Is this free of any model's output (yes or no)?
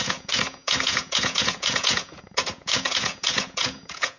no